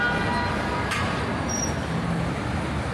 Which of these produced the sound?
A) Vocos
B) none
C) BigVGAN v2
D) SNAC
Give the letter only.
B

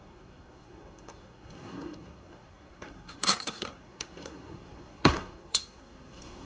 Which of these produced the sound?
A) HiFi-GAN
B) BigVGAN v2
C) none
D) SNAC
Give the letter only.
D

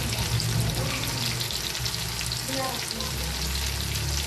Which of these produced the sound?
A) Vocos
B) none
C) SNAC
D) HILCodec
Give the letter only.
B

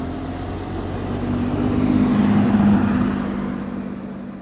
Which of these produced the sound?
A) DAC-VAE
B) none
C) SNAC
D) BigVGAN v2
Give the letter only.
B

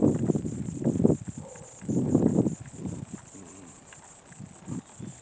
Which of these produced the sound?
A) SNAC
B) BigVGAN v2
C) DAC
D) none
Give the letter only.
D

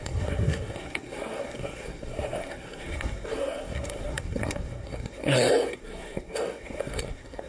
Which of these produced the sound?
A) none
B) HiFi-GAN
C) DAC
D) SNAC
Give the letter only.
D